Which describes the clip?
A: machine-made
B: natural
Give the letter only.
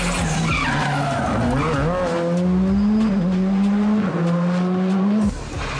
B